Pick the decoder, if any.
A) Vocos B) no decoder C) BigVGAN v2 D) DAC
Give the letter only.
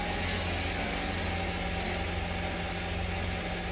B